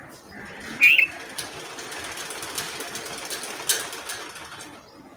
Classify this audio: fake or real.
real